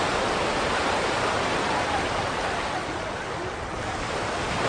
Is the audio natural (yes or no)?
yes